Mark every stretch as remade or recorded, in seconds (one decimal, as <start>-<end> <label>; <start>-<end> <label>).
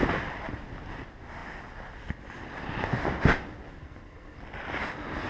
0.0-3.8 recorded; 3.8-4.4 remade; 4.4-5.3 recorded